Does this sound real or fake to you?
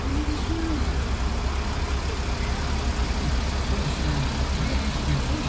real